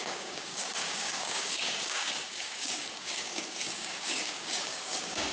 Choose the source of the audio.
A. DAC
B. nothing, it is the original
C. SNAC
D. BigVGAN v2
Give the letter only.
A